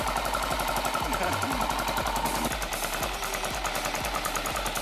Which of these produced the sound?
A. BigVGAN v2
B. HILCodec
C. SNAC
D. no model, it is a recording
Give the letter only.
D